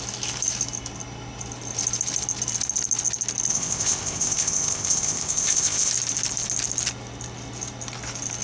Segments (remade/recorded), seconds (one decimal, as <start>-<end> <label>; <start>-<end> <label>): 0.0-3.5 recorded; 3.5-5.9 remade; 5.9-8.4 recorded